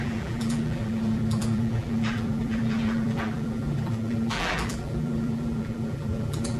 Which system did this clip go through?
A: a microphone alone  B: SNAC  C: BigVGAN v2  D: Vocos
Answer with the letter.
C